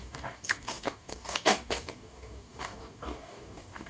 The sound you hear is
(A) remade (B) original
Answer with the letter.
A